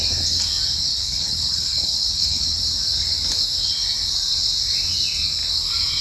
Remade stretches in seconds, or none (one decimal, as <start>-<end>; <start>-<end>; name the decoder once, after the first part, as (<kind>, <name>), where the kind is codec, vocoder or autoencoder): 0.9-2.6 (codec, HILCodec)